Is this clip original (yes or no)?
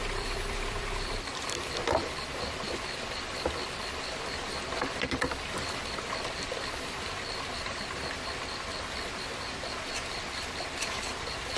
no